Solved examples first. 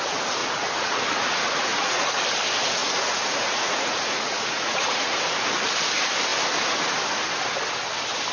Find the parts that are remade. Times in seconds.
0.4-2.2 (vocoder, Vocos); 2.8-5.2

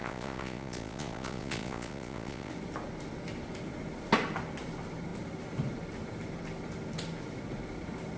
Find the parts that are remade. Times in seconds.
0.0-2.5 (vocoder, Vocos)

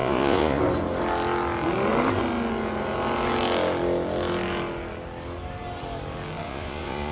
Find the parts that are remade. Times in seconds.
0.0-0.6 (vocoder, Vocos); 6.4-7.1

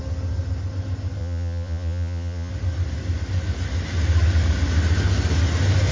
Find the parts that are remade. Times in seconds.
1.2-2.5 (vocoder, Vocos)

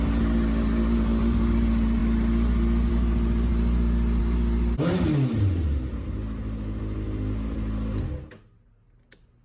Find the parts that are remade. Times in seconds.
none

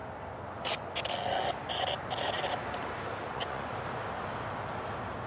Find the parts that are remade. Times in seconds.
3.2-3.7 (vocoder, Vocos)